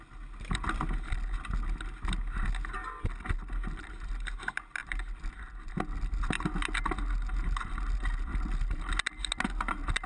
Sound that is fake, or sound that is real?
real